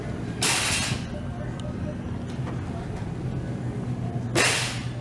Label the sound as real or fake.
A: real